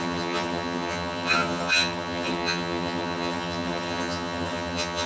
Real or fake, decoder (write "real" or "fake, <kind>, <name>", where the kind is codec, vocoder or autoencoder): fake, vocoder, HiFi-GAN